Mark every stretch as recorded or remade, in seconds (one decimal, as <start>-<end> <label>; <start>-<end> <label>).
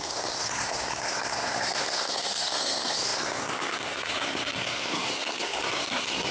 0.0-6.3 remade